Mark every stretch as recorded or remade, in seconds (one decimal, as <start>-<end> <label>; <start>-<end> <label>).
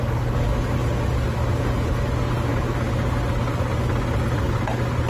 0.0-5.1 recorded